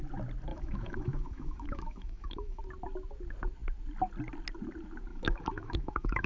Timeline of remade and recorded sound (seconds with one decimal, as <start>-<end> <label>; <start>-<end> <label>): 0.0-0.5 recorded; 0.5-2.6 remade; 2.6-5.1 recorded; 5.1-6.3 remade